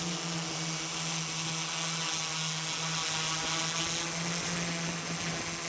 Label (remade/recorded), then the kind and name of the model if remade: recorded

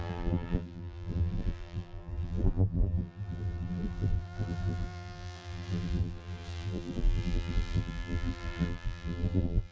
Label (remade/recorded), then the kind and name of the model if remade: remade, vocoder, BigVGAN v2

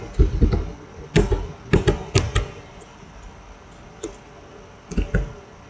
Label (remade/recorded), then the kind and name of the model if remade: recorded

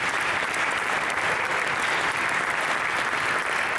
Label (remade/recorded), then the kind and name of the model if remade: recorded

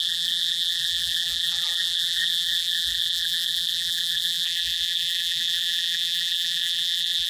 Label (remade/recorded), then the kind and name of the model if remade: remade, vocoder, BigVGAN v2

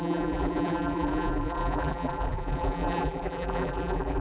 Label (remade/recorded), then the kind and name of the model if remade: remade, vocoder, BigVGAN v2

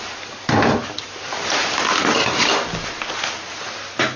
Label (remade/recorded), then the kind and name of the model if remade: remade, vocoder, BigVGAN v2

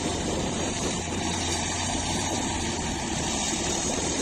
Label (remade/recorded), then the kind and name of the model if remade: remade, vocoder, BigVGAN v2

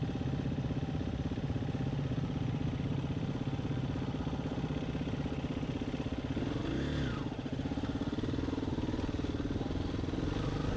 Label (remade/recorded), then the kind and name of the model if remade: recorded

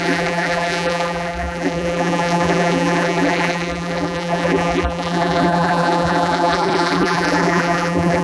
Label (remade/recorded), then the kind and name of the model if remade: remade, vocoder, BigVGAN v2